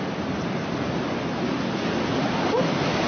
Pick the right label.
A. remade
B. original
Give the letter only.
B